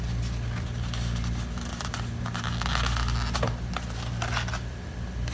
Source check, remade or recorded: recorded